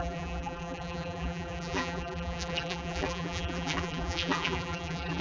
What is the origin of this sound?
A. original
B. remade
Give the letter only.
B